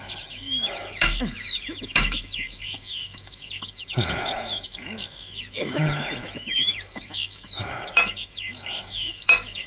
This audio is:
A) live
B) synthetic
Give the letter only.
B